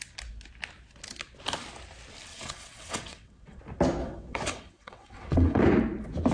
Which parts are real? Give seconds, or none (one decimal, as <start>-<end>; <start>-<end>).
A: 0.0-2.3; 3.6-4.0; 5.6-6.3